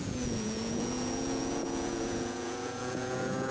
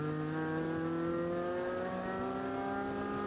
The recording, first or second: second